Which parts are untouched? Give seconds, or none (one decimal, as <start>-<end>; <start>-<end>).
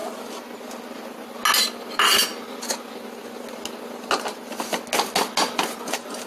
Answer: 0.0-6.3